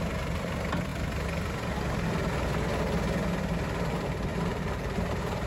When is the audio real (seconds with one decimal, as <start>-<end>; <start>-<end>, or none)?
0.0-4.3